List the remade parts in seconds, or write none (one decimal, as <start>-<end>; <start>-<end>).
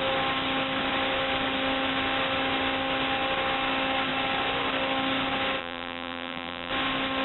5.6-6.7